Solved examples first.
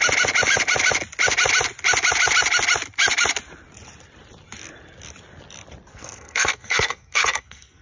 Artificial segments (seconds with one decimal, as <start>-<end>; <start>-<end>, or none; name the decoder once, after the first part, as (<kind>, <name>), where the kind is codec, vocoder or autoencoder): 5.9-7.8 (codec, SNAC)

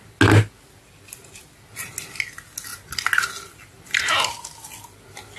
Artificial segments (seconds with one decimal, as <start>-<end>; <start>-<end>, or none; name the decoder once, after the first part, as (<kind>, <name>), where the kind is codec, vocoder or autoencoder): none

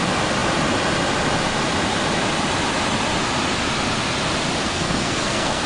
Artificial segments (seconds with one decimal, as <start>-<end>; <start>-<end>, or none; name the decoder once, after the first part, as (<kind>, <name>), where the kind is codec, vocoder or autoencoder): 4.6-5.7 (codec, SNAC)